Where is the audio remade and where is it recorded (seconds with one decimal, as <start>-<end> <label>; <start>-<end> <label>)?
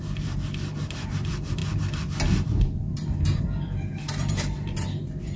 0.0-5.4 remade